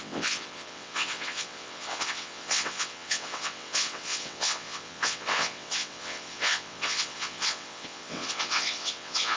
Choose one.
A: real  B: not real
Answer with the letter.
B